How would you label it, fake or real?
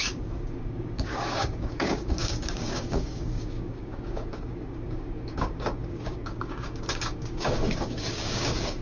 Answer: fake